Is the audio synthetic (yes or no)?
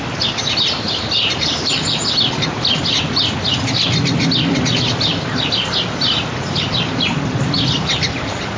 no